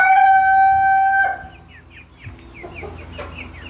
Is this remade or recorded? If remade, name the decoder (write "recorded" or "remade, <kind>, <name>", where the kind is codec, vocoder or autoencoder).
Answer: recorded